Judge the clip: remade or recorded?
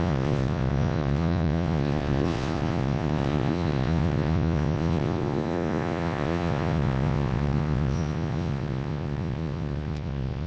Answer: remade